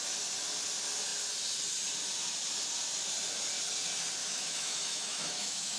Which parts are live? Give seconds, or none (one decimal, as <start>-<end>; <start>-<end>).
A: 0.0-4.2